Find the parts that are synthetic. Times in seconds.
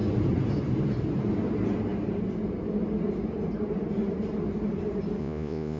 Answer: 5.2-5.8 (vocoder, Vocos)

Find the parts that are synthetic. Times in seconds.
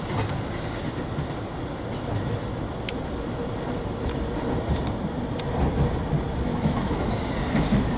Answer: 6.5-7.1 (autoencoder, DAC-VAE)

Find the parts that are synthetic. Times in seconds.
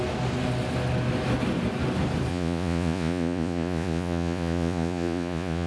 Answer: 2.3-5.7 (vocoder, Vocos)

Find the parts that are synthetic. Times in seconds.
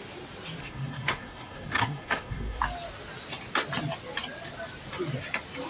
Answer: 0.6-2.6 (codec, SNAC)